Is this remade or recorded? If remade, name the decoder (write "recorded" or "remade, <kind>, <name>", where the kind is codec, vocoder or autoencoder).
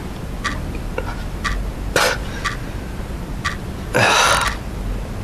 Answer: recorded